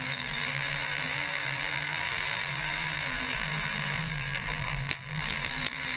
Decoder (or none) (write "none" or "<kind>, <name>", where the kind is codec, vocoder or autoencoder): vocoder, BigVGAN v2